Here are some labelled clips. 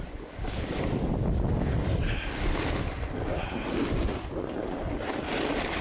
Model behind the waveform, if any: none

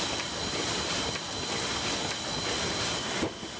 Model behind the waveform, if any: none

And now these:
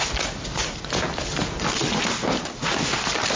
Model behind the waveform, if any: none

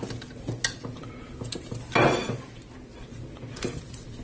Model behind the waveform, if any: none